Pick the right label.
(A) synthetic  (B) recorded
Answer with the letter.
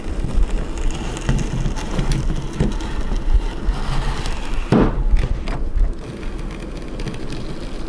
B